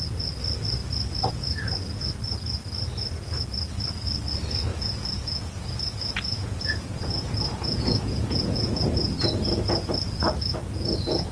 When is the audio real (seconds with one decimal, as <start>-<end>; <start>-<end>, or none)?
0.0-4.7; 8.8-11.3